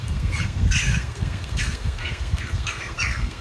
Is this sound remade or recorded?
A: remade